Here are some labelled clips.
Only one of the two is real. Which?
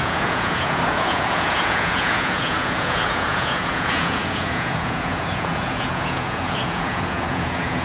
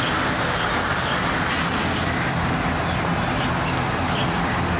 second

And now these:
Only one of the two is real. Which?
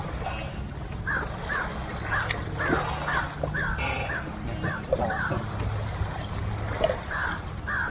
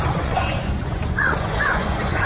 first